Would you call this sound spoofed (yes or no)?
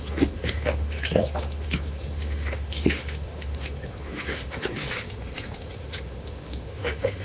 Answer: yes